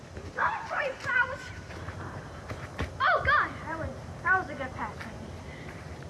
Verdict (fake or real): fake